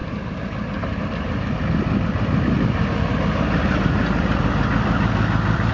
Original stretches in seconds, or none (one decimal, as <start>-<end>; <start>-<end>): 1.0-5.7